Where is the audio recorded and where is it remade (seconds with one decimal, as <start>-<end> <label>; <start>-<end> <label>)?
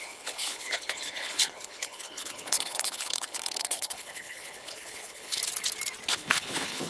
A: 0.0-5.4 remade; 5.4-6.1 recorded; 6.1-6.9 remade